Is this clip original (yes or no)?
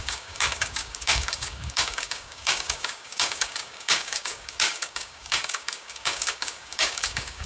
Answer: no